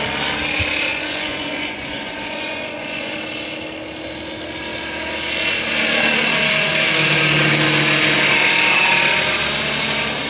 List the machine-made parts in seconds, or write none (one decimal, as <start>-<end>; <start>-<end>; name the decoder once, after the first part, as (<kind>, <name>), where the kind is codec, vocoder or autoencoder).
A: 0.9-3.1 (vocoder, Vocos)